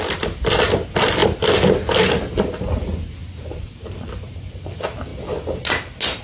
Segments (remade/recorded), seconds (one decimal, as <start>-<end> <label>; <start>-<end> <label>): 0.0-3.2 recorded; 3.2-3.9 remade; 3.9-6.2 recorded